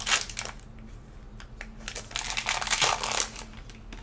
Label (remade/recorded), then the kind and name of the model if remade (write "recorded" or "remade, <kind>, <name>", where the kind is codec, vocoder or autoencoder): recorded